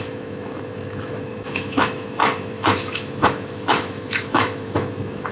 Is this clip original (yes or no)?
no